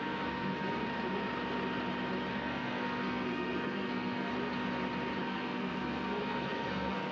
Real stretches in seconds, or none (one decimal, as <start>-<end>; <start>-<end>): 0.8-2.3; 4.3-5.2

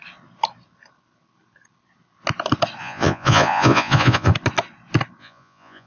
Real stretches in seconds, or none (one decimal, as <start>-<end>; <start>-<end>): 0.0-2.8; 4.3-5.2